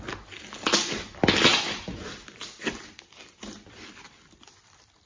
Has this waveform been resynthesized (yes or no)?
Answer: no